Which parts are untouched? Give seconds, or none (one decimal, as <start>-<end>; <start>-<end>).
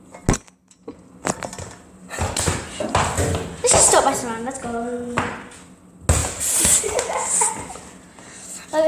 0.0-6.2; 7.0-8.9